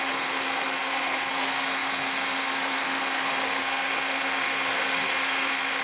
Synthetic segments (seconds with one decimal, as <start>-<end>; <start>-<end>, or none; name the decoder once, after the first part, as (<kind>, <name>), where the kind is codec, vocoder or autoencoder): 0.0-5.8 (codec, SNAC)